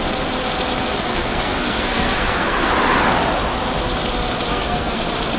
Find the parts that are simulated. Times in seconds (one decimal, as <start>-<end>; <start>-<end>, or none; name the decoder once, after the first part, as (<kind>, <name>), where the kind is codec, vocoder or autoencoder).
1.1-2.7 (codec, SNAC); 4.5-5.0